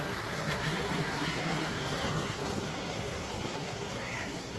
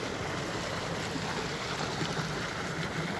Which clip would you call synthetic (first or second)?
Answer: first